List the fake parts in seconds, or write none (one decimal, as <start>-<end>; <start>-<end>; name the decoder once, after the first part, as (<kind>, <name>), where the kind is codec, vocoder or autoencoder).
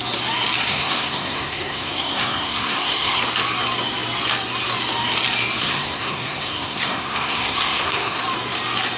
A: 0.7-3.2 (codec, SNAC); 5.6-8.2